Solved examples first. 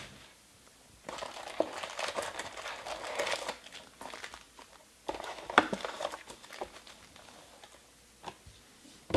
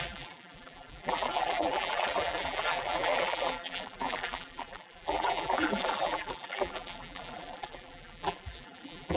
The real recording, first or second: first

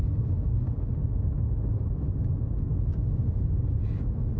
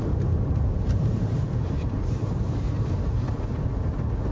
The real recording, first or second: first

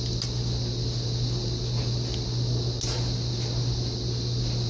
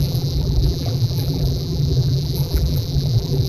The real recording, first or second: first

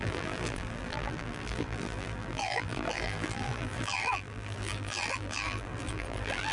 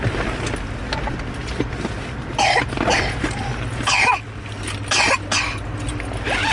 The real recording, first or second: second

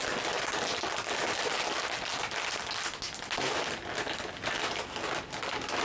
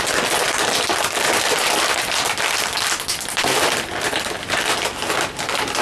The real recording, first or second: first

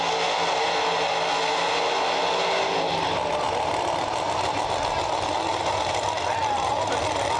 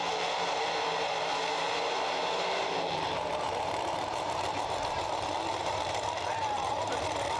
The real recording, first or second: first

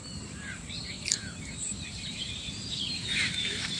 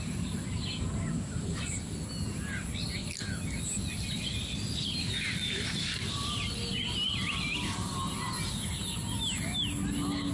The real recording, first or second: second